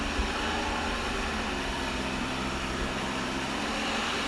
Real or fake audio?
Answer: fake